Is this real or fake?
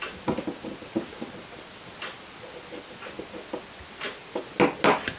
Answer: real